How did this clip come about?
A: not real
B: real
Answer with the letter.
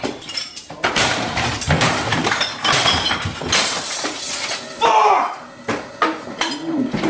A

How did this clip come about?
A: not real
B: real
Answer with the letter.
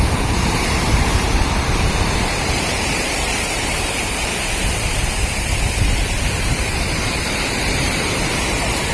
A